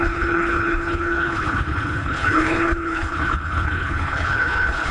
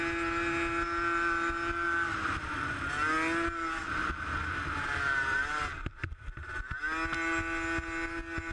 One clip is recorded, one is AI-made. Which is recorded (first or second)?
second